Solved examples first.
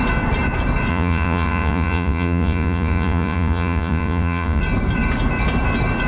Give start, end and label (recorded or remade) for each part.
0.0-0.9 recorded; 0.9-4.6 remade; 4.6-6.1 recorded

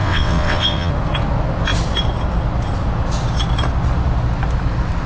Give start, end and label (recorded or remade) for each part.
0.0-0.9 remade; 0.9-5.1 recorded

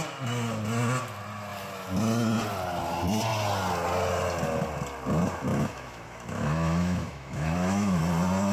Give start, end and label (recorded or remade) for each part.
0.0-5.5 recorded; 5.5-8.0 remade; 8.0-8.5 recorded

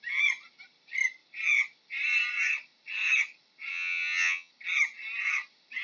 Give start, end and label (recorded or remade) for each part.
0.0-3.7 recorded; 3.7-4.5 remade; 4.5-5.8 recorded

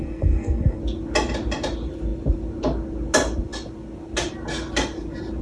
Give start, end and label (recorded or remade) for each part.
0.0-0.8 remade; 0.8-5.4 recorded